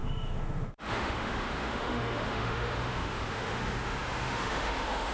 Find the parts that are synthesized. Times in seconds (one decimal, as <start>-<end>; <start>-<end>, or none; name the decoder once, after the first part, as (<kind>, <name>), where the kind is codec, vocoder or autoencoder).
0.0-5.1 (autoencoder, DAC-VAE)